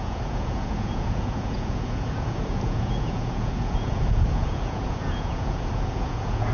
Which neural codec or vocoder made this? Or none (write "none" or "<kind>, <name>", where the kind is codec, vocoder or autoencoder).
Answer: vocoder, Vocos